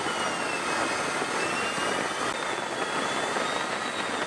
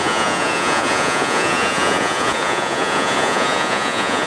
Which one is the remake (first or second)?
second